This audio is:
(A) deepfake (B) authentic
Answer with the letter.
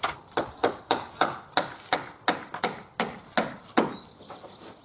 B